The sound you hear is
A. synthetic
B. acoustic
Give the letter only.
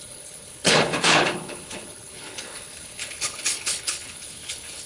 A